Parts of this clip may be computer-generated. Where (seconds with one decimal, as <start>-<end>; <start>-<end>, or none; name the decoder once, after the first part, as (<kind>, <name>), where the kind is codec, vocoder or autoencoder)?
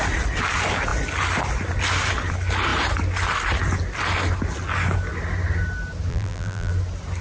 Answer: 6.1-6.7 (vocoder, BigVGAN v2)